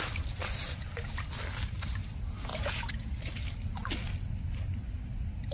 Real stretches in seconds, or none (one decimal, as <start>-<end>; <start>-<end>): 0.0-2.5; 3.2-5.5